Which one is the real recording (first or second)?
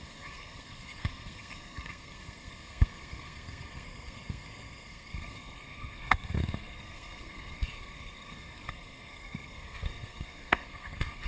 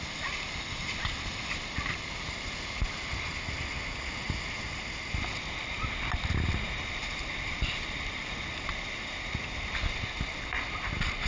second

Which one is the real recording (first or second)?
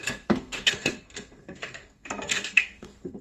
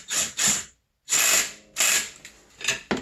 second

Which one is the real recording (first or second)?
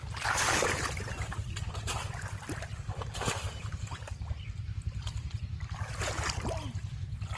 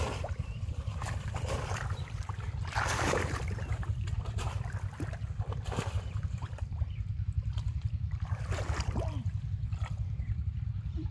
first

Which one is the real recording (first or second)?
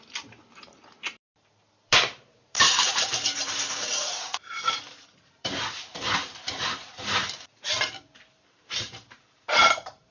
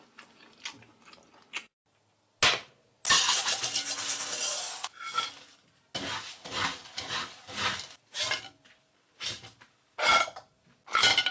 second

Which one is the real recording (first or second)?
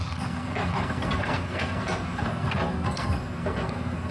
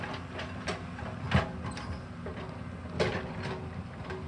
second